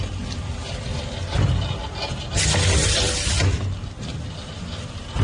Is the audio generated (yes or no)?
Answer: no